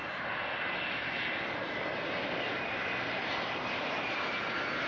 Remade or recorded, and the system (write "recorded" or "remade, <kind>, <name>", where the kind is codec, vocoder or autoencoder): recorded